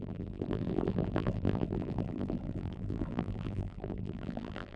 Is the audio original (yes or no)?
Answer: no